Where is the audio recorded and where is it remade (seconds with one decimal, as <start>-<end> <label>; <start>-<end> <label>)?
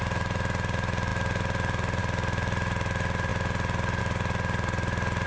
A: 0.0-5.3 recorded